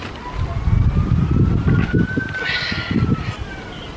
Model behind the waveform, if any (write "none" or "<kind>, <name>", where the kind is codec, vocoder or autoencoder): none